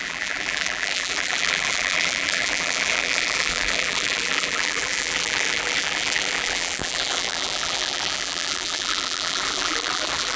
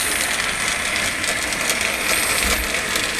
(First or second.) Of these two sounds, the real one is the second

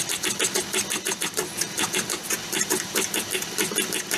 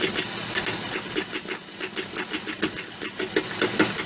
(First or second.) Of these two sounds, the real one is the second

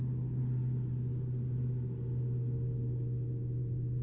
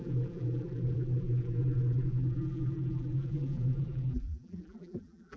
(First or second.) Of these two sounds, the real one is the first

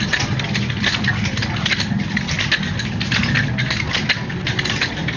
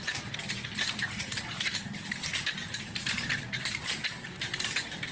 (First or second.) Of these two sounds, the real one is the first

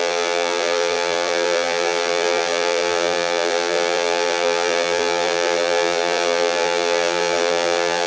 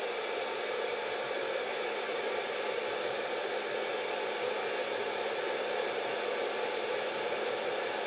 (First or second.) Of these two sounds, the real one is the second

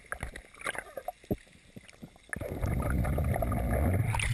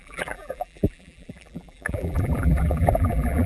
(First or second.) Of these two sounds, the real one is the first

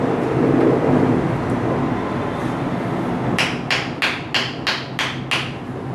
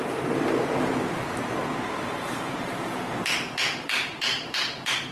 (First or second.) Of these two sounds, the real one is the first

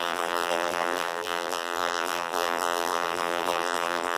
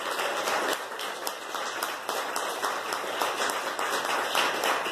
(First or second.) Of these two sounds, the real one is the second